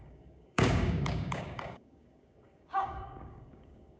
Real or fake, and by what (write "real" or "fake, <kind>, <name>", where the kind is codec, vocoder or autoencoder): fake, codec, DAC